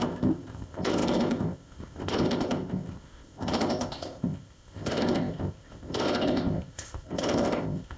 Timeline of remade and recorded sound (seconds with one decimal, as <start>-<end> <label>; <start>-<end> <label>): 0.0-8.0 remade